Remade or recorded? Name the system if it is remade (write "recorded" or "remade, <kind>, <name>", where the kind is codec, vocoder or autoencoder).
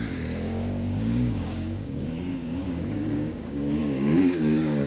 remade, codec, DAC